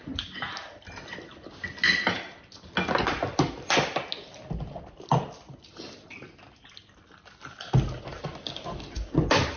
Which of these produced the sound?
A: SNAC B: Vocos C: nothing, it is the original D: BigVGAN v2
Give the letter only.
C